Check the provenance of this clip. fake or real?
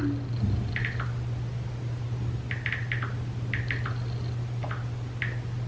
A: real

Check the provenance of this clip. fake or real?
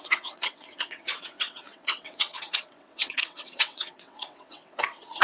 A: fake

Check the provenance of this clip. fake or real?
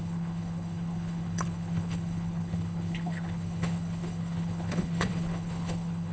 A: fake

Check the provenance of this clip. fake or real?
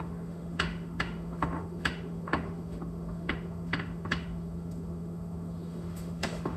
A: fake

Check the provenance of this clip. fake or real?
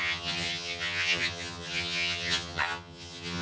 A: fake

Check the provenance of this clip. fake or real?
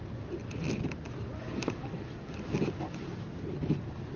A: real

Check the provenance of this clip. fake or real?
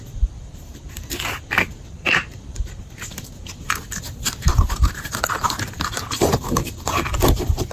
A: fake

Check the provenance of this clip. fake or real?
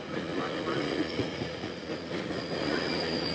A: fake